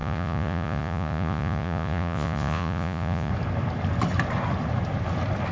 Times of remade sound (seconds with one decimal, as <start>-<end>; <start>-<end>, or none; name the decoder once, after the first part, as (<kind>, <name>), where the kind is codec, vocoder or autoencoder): 0.0-3.3 (vocoder, Vocos)